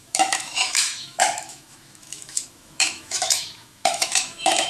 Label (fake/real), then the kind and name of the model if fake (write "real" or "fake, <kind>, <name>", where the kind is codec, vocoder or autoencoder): fake, autoencoder, DAC-VAE